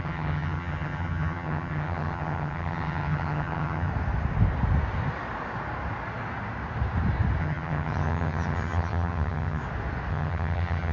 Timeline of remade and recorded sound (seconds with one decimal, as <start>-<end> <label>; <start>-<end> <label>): 0.0-3.9 remade; 3.9-7.4 recorded; 7.4-9.6 remade; 9.6-10.1 recorded; 10.1-10.9 remade